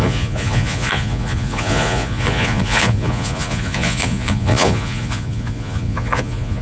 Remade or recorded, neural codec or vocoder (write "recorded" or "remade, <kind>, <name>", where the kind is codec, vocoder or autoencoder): remade, vocoder, Vocos